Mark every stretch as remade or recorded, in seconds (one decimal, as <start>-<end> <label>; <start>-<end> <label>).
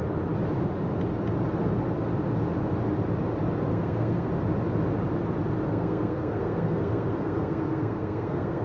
0.0-3.7 recorded; 3.7-4.3 remade; 4.3-5.7 recorded; 5.7-8.6 remade